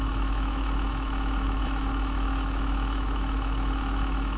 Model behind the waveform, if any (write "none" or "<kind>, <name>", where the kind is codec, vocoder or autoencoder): autoencoder, DAC-VAE